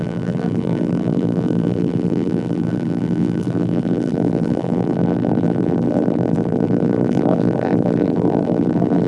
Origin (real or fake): fake